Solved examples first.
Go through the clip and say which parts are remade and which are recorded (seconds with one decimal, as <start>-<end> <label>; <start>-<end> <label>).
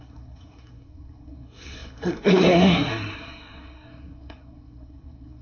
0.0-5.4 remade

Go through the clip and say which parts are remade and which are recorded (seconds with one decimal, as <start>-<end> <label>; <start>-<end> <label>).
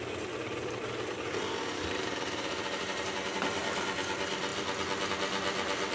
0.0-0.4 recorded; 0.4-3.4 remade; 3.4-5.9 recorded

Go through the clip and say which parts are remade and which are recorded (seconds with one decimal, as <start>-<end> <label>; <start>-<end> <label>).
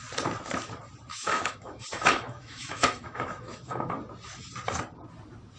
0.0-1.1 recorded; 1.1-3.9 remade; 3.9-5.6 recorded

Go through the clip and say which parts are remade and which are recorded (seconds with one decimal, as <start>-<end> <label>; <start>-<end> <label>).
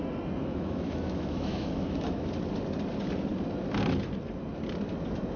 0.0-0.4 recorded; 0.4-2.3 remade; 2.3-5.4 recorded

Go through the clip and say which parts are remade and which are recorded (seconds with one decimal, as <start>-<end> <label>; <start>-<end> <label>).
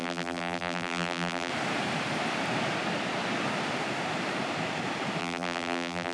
0.0-1.5 remade; 1.5-5.2 recorded; 5.2-6.1 remade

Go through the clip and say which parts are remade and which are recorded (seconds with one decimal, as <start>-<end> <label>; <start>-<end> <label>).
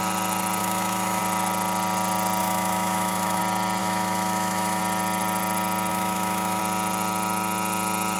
0.0-0.6 recorded; 0.6-1.2 remade; 1.2-2.4 recorded; 2.4-3.4 remade; 3.4-3.8 recorded; 3.8-4.8 remade; 4.8-5.9 recorded; 5.9-6.6 remade; 6.6-8.2 recorded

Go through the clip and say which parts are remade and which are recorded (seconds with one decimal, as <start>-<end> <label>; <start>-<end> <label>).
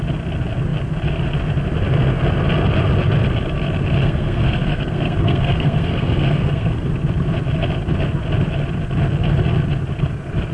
0.0-4.0 recorded; 4.0-6.9 remade; 6.9-10.5 recorded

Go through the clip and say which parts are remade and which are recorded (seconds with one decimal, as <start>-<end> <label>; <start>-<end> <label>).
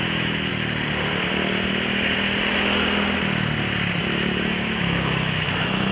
0.0-0.5 remade; 0.5-4.0 recorded; 4.0-5.9 remade